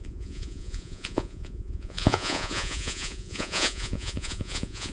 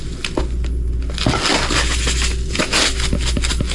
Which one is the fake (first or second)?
first